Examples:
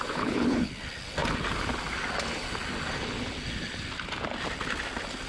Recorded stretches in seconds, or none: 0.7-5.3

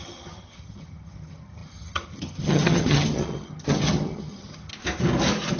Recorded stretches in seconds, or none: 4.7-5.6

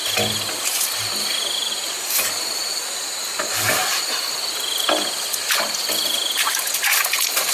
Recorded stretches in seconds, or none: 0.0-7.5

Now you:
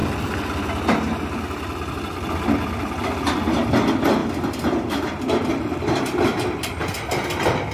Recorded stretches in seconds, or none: 0.0-1.9; 6.7-7.7

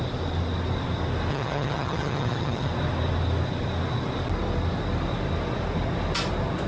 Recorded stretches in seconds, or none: 0.0-1.3; 2.7-6.7